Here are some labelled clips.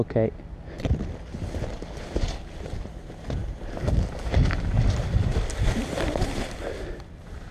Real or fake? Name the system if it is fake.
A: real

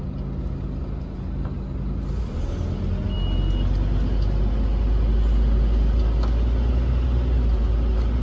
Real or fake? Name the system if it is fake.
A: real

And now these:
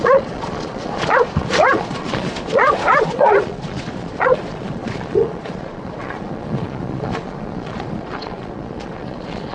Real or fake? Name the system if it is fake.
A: fake, vocoder, Vocos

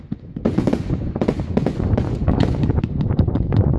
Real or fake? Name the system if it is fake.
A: fake, vocoder, Vocos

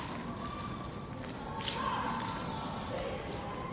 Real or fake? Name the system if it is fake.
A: real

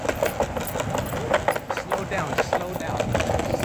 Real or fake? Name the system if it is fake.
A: real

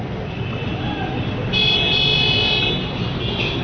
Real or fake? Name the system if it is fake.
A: real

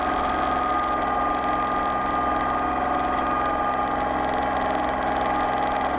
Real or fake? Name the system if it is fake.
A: real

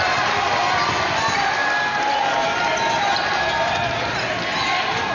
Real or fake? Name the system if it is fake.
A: real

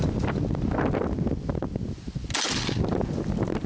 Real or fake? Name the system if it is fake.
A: real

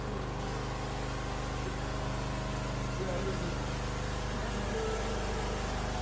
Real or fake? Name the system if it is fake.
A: real